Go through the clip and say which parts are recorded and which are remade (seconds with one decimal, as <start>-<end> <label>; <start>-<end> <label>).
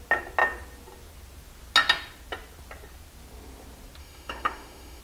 0.0-4.0 recorded; 4.0-5.0 remade